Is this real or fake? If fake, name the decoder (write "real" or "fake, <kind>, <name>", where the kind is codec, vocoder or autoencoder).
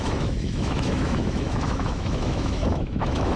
fake, autoencoder, DAC-VAE